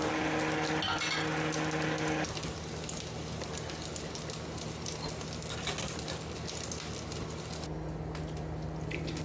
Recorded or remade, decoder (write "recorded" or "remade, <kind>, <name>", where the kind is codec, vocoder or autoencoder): recorded